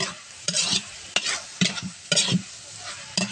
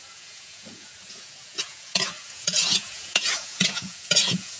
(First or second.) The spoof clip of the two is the second